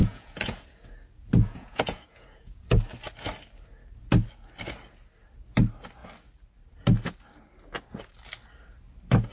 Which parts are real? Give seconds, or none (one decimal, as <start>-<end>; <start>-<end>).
0.8-1.4; 2.7-9.3